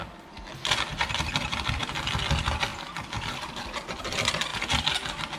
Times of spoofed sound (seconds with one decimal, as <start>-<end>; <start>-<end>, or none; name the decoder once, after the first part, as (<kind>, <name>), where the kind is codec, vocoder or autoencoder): none

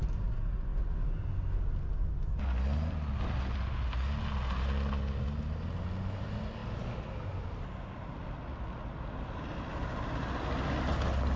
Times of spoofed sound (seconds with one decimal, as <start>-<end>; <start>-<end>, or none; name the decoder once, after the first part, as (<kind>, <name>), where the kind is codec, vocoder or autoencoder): none

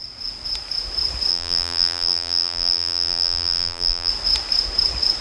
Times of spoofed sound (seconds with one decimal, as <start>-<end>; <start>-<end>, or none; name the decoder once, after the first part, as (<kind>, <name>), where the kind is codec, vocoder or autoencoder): 1.3-4.1 (vocoder, BigVGAN v2)

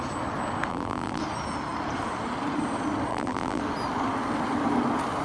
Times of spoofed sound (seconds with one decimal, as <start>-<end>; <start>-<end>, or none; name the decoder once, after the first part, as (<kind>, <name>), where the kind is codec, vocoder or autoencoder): 0.7-1.2 (vocoder, BigVGAN v2); 3.1-3.6

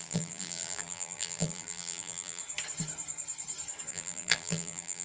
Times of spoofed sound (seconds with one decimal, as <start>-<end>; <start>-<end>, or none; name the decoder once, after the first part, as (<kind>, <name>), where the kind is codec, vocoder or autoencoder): 0.0-2.4 (vocoder, BigVGAN v2); 3.9-5.0

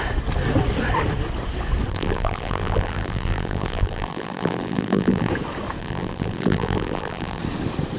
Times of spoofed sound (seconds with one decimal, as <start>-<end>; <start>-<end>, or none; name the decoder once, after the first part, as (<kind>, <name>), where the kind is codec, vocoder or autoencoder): 1.9-5.3 (vocoder, BigVGAN v2); 5.8-7.4